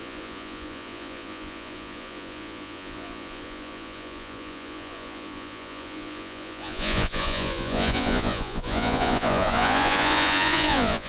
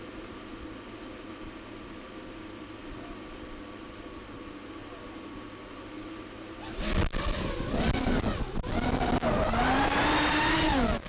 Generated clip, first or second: first